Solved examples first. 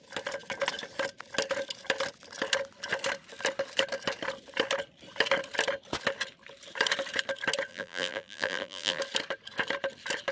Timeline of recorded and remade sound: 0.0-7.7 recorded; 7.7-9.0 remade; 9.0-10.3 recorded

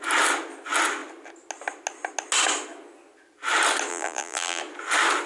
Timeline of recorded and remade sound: 0.0-3.9 recorded; 3.9-4.6 remade; 4.6-5.3 recorded